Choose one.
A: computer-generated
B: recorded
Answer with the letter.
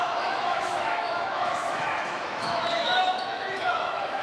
A